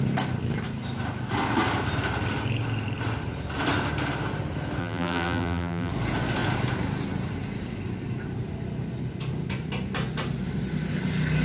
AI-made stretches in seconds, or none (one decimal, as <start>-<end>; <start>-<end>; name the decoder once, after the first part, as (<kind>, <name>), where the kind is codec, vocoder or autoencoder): 4.8-5.9 (vocoder, BigVGAN v2)